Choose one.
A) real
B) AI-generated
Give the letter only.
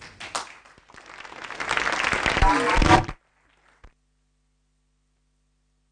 A